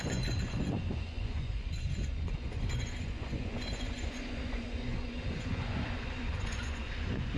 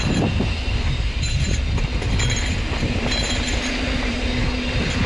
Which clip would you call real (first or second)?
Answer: second